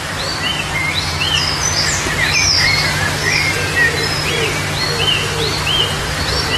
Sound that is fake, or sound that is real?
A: real